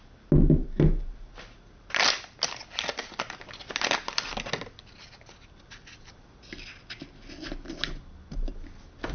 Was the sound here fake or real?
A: real